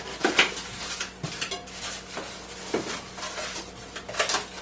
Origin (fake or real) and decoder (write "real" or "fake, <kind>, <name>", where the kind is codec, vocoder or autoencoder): real